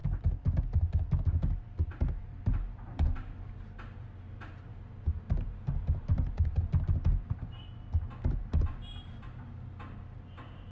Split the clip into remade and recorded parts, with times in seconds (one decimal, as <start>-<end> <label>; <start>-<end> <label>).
0.0-4.7 recorded; 4.7-6.6 remade; 6.6-10.7 recorded